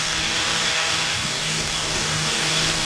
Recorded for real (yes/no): no